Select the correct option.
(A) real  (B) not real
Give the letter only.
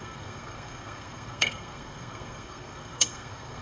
B